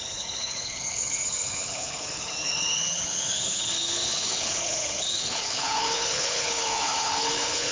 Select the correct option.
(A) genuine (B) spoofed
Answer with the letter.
B